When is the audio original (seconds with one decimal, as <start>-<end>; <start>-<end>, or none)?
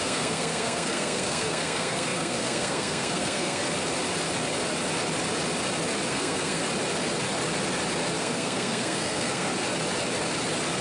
3.6-6.1; 6.6-8.2; 9.5-10.8